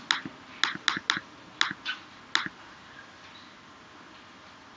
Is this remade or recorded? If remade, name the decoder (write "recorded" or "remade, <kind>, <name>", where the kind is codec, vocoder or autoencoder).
recorded